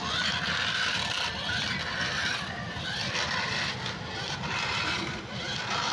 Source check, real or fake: real